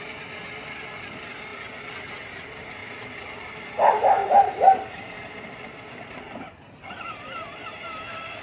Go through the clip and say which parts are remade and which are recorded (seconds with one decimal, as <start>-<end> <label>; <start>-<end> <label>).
0.0-2.8 recorded; 2.8-3.6 remade; 3.6-4.2 recorded; 4.2-8.0 remade; 8.0-8.4 recorded